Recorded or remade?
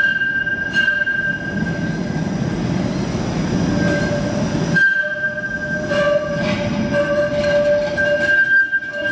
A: recorded